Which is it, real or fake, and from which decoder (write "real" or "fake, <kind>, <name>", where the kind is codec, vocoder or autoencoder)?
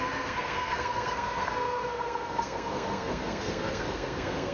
fake, codec, SNAC